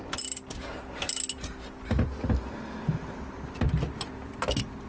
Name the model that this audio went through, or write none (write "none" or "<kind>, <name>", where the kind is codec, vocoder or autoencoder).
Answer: none